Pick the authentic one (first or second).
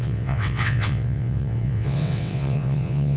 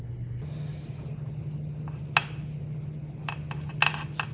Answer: second